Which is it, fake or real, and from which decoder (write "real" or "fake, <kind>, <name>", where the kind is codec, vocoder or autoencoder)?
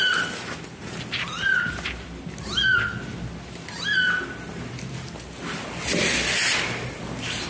real